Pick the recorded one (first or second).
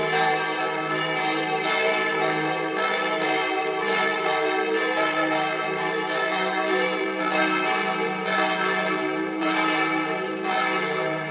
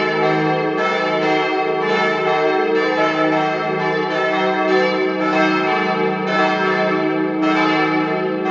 second